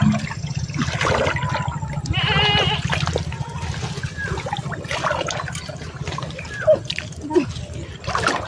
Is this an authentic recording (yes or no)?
yes